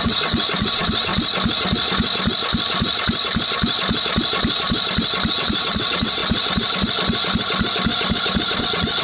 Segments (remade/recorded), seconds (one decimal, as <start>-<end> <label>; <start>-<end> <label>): 0.0-1.1 remade; 1.1-5.3 recorded; 5.3-6.2 remade; 6.2-8.6 recorded; 8.6-9.0 remade